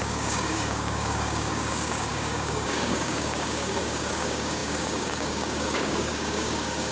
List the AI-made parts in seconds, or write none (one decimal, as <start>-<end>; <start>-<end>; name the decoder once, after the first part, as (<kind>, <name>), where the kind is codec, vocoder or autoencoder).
0.0-6.9 (codec, DAC)